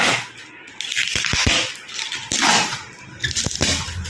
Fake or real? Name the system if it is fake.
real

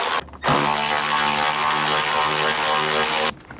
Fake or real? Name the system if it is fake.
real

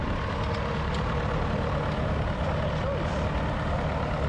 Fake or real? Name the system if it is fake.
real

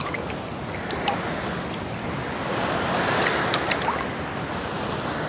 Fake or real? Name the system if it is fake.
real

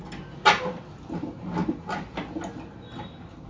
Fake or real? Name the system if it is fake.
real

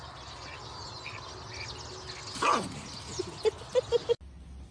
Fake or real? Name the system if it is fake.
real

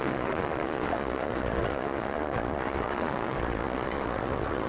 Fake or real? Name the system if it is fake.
fake, vocoder, Vocos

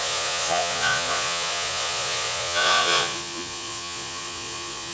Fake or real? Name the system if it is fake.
fake, vocoder, Vocos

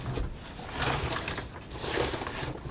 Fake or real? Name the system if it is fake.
real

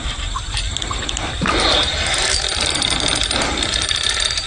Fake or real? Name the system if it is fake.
real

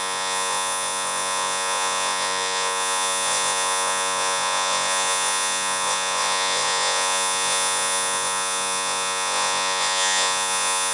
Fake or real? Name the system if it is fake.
fake, vocoder, Vocos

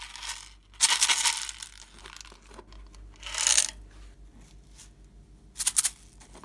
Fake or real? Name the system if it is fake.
real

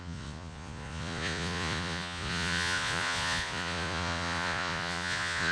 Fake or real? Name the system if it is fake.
fake, vocoder, Vocos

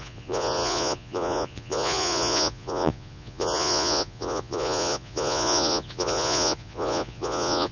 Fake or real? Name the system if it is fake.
fake, vocoder, Vocos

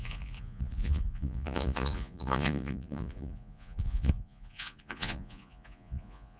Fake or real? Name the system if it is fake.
fake, vocoder, Vocos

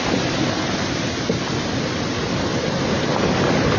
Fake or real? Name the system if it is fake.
real